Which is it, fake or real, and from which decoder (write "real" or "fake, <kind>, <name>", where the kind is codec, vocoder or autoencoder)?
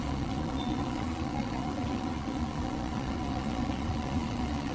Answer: fake, vocoder, Vocos